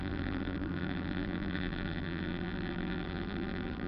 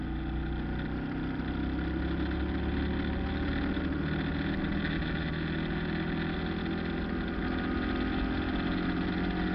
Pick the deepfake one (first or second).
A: first